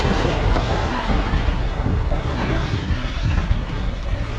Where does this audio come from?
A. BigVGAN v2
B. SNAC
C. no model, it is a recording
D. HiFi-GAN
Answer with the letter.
B